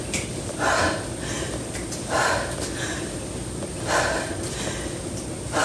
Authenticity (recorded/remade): recorded